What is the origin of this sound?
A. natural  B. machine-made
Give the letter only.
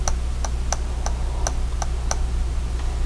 A